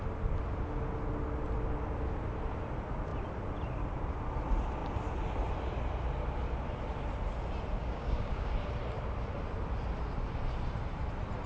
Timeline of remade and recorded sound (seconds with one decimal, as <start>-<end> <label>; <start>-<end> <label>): 0.0-7.8 recorded; 7.8-8.5 remade; 8.5-11.5 recorded